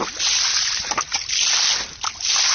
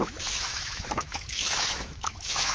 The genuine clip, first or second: first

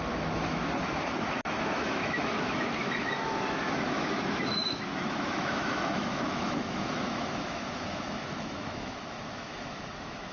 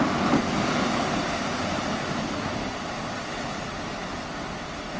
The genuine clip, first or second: second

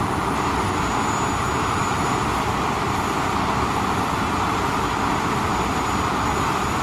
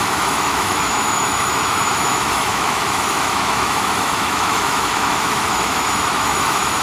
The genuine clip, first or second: first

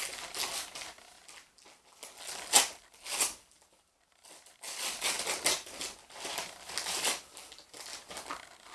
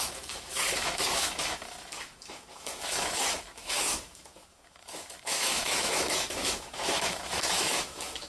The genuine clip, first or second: first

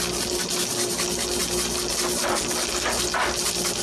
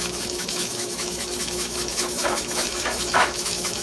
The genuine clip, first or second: first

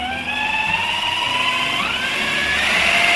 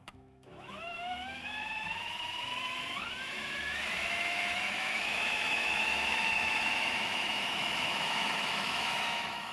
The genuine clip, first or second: first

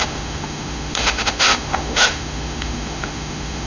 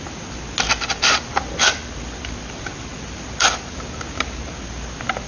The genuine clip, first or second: second